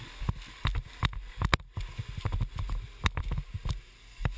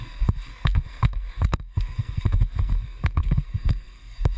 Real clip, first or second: first